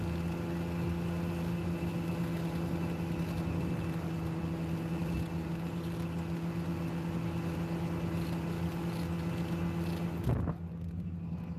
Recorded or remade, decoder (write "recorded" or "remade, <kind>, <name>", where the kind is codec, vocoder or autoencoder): recorded